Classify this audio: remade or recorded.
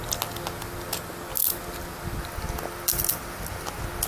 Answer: recorded